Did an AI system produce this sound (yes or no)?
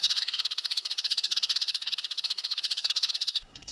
yes